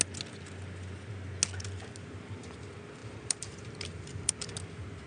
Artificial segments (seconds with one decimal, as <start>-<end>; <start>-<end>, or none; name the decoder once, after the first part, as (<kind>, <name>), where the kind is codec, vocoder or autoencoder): 3.0-4.5 (vocoder, BigVGAN v2)